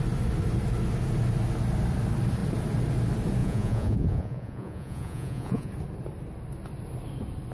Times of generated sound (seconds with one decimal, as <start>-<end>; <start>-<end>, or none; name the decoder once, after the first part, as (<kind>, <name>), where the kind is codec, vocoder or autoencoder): 3.4-5.7 (vocoder, Vocos)